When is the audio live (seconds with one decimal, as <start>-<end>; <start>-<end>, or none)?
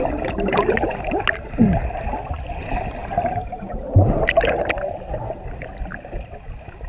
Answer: 0.0-6.9